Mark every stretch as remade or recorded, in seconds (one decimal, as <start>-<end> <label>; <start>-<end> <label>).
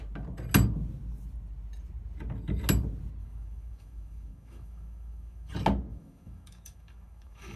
0.0-3.2 recorded; 3.2-5.5 remade; 5.5-5.9 recorded; 5.9-7.6 remade